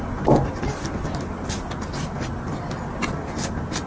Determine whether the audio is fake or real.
real